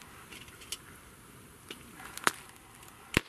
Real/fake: fake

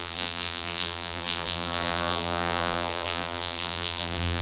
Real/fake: fake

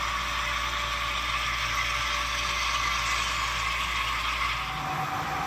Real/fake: real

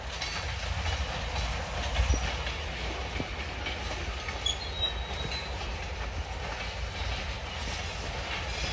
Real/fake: real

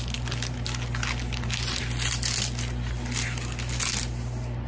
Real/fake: real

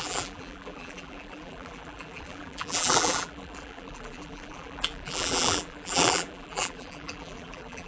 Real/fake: fake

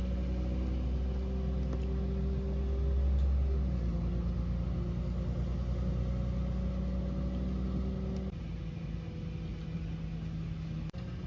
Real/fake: real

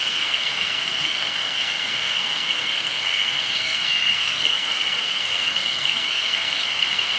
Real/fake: fake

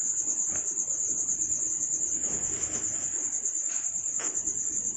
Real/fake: real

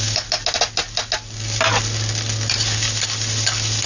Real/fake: real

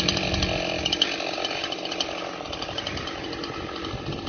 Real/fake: real